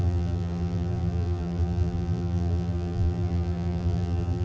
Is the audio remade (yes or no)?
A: yes